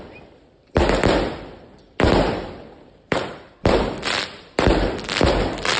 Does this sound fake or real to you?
fake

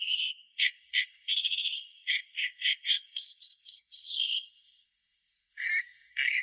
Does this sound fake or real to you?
fake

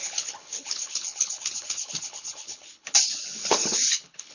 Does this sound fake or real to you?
fake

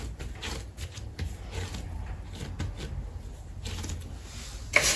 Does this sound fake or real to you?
real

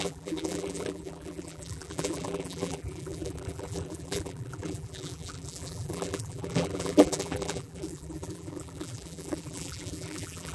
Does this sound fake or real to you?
fake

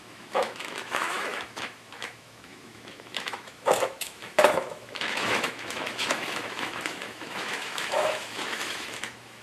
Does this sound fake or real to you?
fake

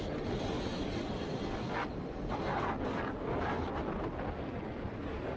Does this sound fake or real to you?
real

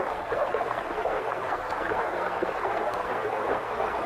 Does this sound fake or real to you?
fake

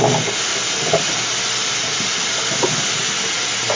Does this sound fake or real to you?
real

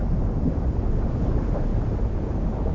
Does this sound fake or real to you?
real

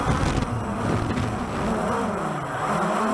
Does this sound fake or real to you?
real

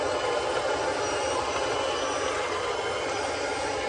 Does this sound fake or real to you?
real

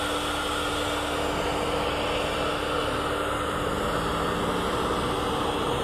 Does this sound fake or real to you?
real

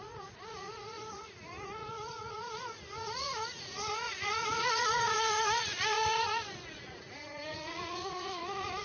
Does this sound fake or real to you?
fake